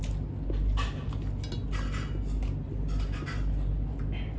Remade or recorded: recorded